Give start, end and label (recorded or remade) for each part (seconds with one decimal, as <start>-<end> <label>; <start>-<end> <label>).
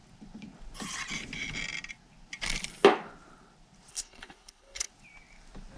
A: 0.0-3.9 recorded; 3.9-4.9 remade; 4.9-5.8 recorded